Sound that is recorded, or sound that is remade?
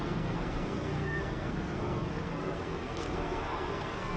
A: remade